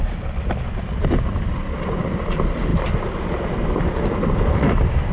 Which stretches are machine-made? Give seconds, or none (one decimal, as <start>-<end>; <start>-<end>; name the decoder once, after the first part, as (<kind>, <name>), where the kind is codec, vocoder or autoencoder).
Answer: none